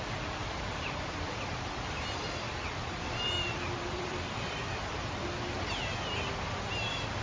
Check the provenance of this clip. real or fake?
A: fake